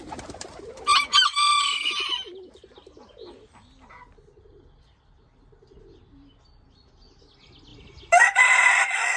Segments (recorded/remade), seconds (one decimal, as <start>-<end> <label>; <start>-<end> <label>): 0.0-7.7 recorded; 7.7-8.7 remade; 8.7-9.2 recorded